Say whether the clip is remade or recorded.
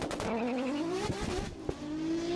recorded